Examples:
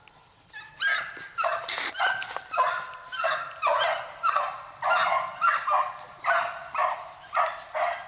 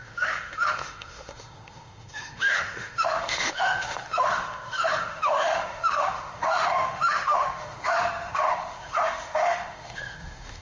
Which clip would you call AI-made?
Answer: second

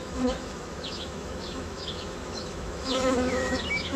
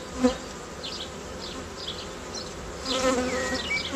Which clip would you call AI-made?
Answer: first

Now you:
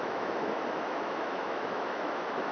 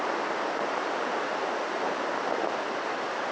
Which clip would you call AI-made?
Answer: first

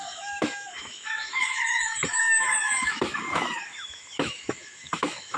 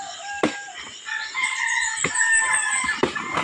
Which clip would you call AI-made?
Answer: first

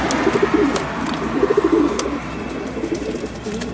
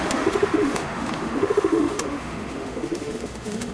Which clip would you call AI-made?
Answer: second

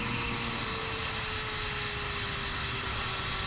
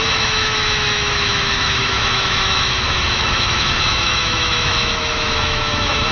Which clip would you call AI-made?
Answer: second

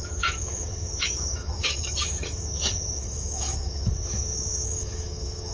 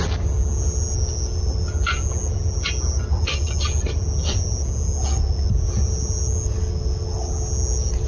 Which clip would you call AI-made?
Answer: first